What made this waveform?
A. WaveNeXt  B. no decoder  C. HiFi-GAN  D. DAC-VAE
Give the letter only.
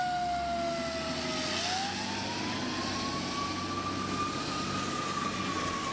B